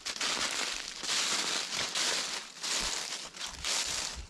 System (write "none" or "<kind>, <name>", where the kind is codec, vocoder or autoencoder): none